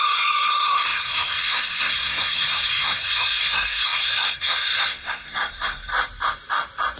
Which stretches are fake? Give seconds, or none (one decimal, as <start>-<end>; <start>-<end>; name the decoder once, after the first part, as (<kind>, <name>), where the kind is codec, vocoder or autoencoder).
0.0-5.9 (codec, SNAC)